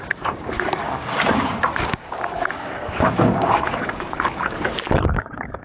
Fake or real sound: fake